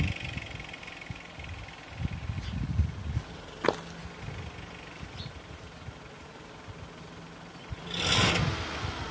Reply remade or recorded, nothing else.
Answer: recorded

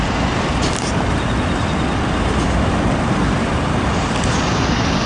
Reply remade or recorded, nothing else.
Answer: recorded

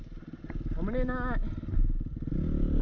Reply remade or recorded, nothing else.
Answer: recorded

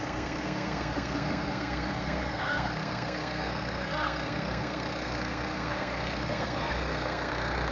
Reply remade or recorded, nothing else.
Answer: remade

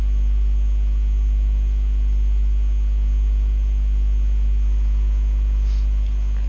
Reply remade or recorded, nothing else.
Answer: recorded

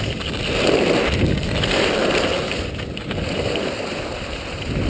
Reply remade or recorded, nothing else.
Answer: recorded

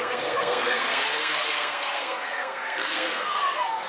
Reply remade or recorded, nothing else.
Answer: remade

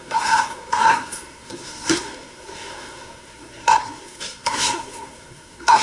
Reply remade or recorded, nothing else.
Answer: remade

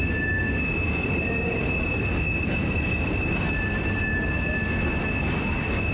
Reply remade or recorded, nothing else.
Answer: recorded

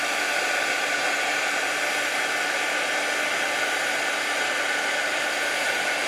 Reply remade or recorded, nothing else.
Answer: recorded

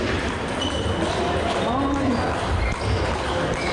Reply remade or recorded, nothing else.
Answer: recorded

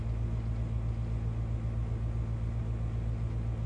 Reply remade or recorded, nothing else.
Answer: recorded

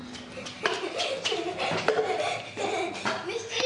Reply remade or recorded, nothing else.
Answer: recorded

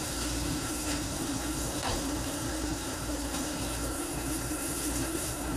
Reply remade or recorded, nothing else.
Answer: remade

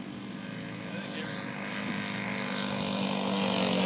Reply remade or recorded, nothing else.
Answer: recorded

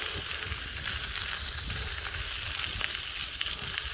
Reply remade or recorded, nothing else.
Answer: recorded